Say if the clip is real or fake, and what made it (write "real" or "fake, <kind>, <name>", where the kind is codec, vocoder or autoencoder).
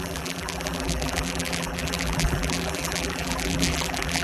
fake, vocoder, BigVGAN v2